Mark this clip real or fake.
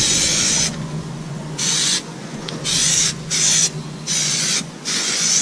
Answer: fake